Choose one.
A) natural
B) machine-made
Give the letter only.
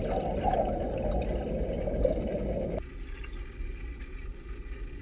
A